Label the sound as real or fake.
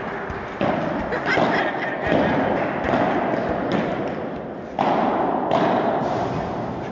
real